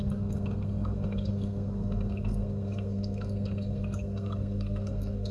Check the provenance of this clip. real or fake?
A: fake